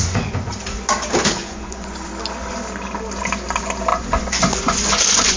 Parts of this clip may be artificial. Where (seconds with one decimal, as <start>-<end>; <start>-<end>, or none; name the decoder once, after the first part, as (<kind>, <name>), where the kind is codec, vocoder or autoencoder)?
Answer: 0.0-0.5 (vocoder, Vocos); 1.4-2.1; 3.9-5.4